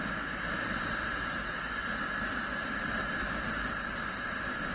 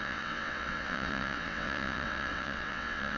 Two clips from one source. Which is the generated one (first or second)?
second